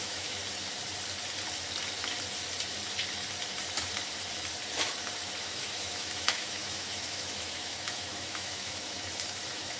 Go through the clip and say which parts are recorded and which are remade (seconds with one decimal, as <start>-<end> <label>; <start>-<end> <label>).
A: 0.0-0.4 remade; 0.4-5.4 recorded; 5.4-9.8 remade